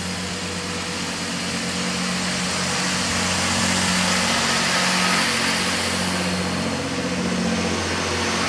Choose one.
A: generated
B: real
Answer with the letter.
B